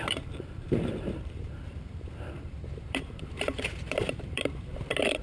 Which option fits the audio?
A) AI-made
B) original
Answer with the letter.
A